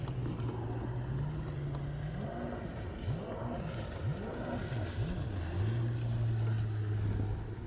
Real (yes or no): yes